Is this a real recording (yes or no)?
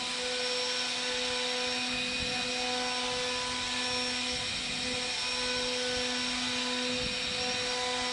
yes